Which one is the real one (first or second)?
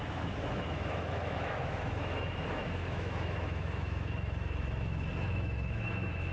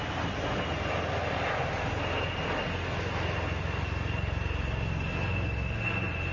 second